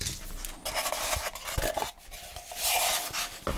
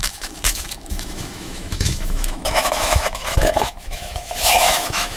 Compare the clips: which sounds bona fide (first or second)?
first